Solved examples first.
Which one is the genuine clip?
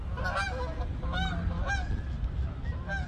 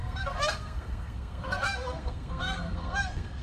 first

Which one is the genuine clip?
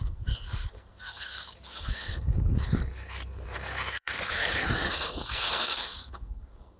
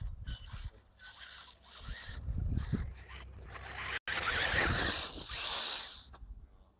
second